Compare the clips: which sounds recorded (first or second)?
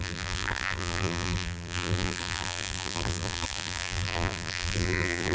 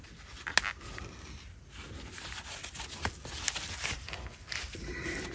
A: second